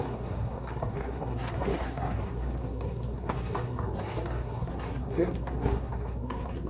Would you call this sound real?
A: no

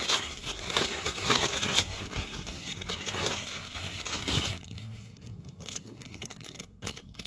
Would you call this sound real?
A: no